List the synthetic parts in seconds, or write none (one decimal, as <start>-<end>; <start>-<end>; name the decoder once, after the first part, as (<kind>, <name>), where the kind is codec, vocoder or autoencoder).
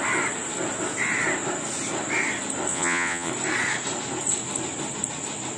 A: 2.7-3.3 (vocoder, Vocos)